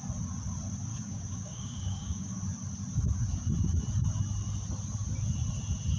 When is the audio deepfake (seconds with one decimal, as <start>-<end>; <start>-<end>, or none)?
0.9-2.4

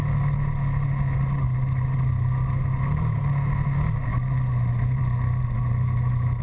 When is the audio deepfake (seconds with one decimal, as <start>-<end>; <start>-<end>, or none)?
none

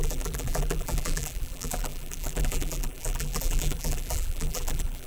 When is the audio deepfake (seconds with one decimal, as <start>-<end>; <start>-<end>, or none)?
0.0-5.1

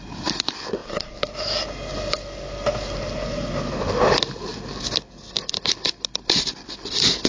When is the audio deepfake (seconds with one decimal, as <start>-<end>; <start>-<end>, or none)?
5.4-5.9

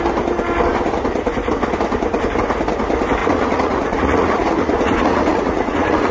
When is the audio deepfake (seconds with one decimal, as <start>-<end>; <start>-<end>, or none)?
3.2-6.1

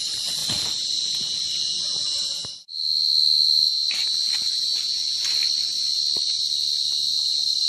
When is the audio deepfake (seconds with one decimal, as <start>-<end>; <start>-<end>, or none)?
0.0-0.4; 2.5-3.1; 7.1-7.7

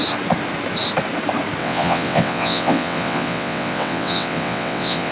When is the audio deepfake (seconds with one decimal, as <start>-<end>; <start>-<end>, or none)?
1.6-5.1